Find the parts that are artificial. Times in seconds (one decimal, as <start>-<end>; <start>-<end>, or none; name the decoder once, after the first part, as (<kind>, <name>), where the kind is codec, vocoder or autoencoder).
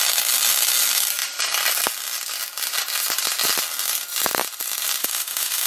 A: 5.0-5.7 (autoencoder, DAC-VAE)